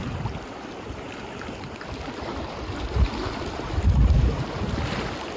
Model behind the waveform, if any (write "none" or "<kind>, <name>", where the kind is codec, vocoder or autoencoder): none